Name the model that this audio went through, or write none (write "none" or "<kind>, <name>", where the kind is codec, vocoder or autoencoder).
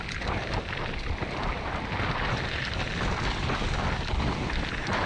none